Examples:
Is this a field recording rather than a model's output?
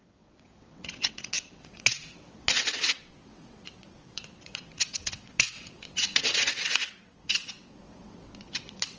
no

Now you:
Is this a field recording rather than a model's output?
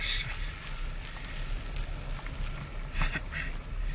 yes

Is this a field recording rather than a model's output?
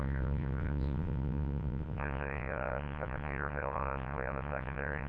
no